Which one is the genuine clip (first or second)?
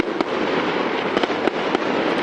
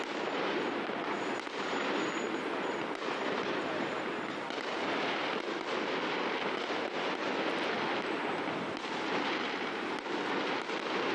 second